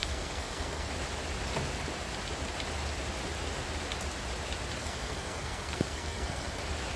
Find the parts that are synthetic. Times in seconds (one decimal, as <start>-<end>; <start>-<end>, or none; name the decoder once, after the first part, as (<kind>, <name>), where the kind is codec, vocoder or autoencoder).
0.0-0.9 (codec, SNAC); 4.8-6.6